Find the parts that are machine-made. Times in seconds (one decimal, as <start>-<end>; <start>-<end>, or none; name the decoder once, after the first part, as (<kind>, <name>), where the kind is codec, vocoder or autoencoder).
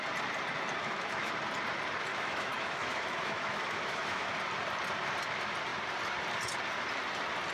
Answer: 0.8-1.3 (autoencoder, DAC-VAE); 2.1-4.3